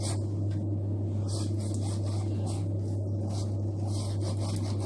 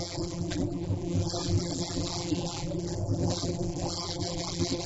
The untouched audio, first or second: first